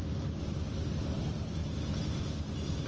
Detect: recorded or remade remade